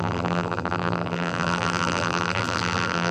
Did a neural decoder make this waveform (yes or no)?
yes